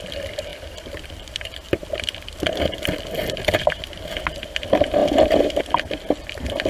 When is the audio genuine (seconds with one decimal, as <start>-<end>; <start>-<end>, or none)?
1.8-4.4